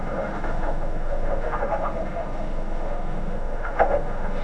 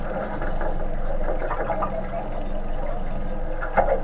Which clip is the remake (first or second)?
first